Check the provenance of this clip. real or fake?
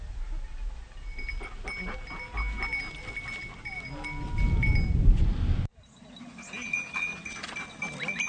real